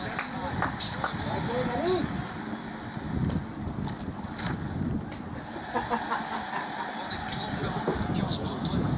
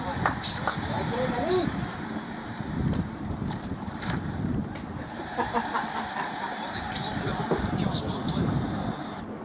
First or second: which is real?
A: first